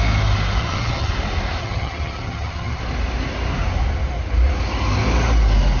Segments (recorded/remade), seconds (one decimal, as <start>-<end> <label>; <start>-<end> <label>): 0.0-0.6 recorded; 0.6-1.1 remade; 1.1-1.6 recorded; 1.6-2.8 remade; 2.8-5.8 recorded